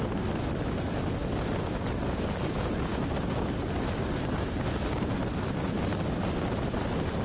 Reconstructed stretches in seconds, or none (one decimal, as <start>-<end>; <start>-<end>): none